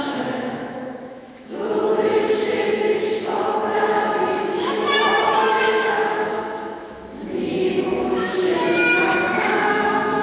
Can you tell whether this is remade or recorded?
remade